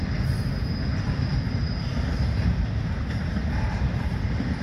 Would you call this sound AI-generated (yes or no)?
no